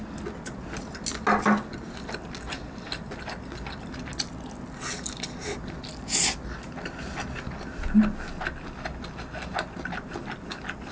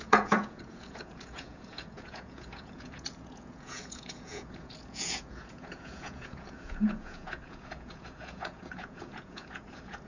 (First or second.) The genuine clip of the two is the first